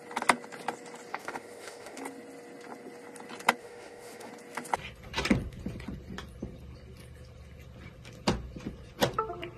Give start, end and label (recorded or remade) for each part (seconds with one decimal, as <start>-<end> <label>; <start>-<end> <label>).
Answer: 0.0-1.1 recorded; 1.1-2.0 remade; 2.0-3.6 recorded; 3.6-4.3 remade; 4.3-9.6 recorded